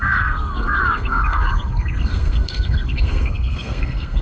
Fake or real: fake